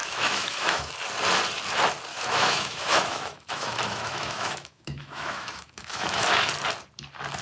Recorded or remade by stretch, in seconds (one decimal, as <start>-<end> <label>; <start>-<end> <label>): 0.0-0.9 remade; 0.9-2.1 recorded; 2.1-6.5 remade; 6.5-7.4 recorded